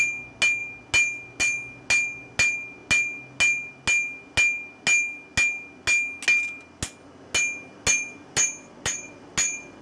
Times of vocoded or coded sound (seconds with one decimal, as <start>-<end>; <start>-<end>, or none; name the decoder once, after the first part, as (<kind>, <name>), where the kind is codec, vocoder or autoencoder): none